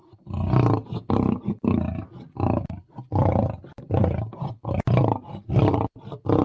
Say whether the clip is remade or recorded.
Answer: recorded